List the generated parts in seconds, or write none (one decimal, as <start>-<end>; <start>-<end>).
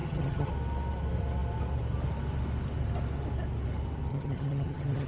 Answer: 0.0-0.5; 4.1-5.1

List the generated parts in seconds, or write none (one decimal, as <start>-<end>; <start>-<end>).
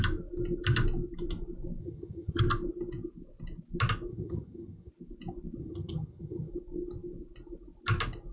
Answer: 1.8-2.4; 4.1-4.9; 5.6-6.5